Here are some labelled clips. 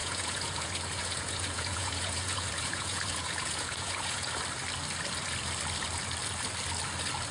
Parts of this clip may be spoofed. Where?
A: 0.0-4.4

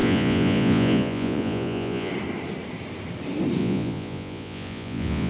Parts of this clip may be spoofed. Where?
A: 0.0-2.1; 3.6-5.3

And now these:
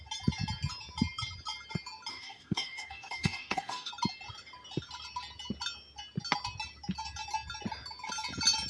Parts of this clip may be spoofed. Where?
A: 2.1-3.9